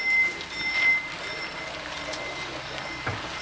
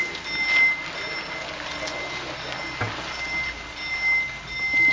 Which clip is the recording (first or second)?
second